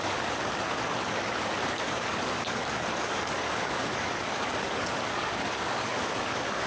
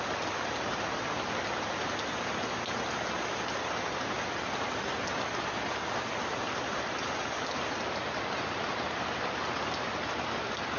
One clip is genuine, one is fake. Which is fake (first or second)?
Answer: first